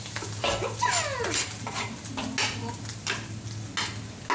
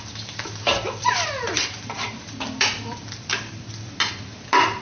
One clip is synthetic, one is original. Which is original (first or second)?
first